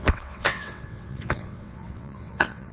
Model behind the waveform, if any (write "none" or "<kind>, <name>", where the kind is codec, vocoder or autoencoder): vocoder, WaveNeXt